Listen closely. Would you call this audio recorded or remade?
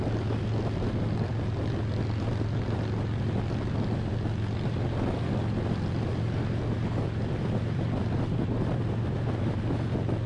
recorded